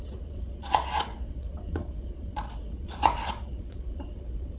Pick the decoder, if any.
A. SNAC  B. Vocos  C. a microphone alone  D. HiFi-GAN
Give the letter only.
B